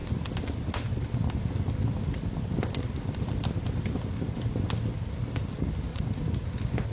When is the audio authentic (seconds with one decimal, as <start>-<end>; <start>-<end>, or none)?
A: 0.0-5.9; 6.5-6.9

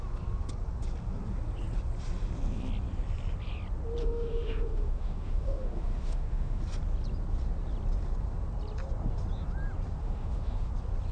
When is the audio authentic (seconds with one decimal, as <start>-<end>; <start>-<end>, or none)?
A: 0.0-4.0; 6.6-10.0; 10.7-11.1

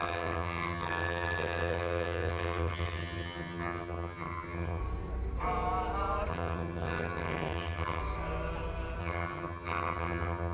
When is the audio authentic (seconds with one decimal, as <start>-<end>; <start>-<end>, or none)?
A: 4.8-6.3; 8.0-9.0

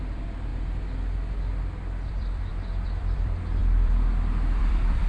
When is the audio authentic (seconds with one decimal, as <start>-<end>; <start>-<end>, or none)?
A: 0.5-2.1

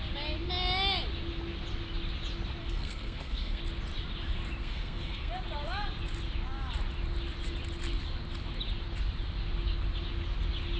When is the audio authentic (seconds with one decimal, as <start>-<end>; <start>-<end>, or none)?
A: 0.0-2.6; 3.6-4.6; 5.3-10.8

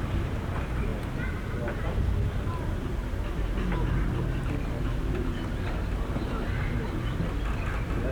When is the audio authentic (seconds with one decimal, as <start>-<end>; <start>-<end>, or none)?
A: 0.0-8.1